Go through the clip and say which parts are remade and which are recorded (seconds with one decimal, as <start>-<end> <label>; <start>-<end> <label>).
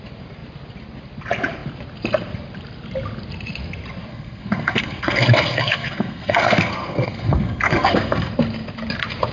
0.0-4.1 recorded; 4.1-8.3 remade; 8.3-9.3 recorded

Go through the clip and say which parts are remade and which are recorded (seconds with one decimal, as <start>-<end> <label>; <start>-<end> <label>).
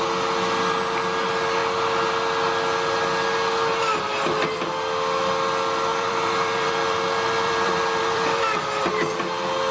0.0-5.9 recorded; 5.9-8.9 remade; 8.9-9.7 recorded